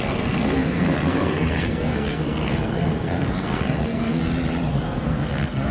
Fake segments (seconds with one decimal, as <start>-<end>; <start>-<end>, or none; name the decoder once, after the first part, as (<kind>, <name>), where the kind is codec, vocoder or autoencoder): 0.0-4.2 (codec, SNAC); 4.7-5.7